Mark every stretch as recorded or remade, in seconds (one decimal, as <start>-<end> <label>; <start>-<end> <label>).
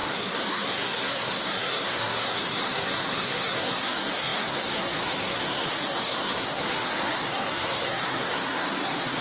0.0-9.2 remade